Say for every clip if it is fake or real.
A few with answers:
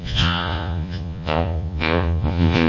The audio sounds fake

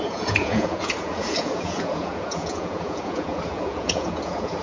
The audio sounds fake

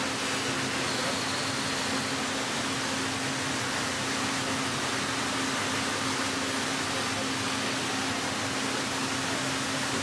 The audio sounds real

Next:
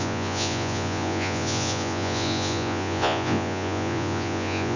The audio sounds fake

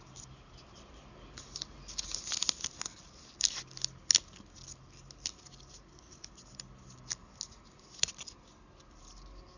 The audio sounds real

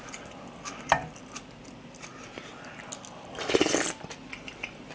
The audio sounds real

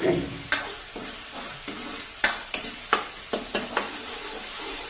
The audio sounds real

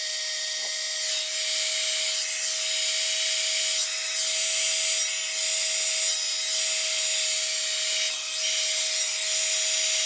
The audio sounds real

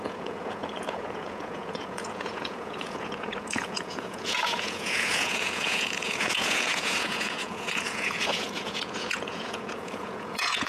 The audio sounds fake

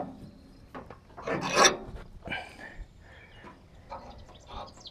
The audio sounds real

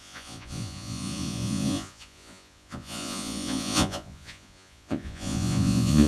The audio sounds fake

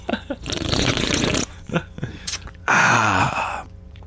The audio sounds fake